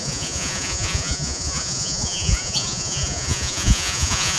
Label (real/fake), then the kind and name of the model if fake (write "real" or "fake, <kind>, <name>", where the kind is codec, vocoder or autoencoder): fake, vocoder, Vocos